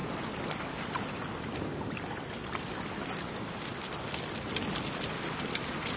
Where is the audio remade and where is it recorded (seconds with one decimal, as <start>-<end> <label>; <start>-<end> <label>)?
0.0-6.0 recorded